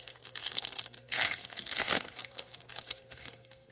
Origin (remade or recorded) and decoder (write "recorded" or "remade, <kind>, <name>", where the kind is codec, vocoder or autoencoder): remade, codec, SNAC